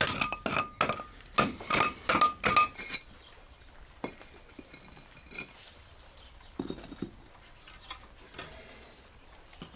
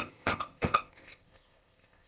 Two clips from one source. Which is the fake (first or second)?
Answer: second